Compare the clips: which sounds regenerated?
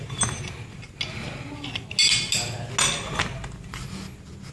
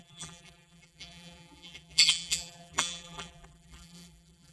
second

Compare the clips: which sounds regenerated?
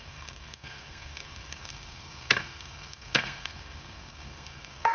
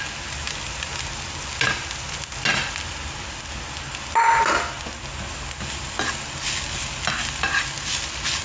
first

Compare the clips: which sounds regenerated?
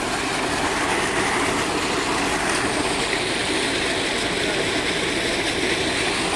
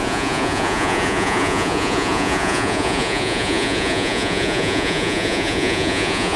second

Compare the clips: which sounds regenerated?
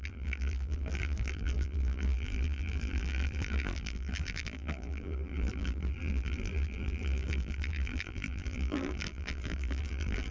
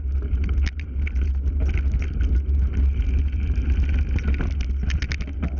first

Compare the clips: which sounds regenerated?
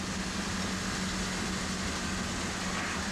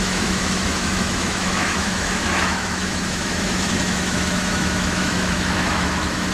second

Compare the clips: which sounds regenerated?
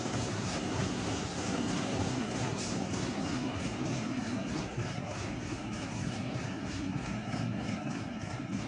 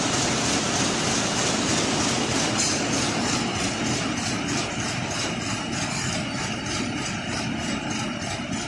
first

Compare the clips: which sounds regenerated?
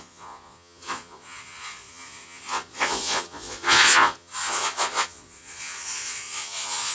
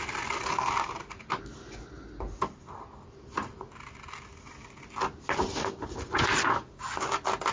first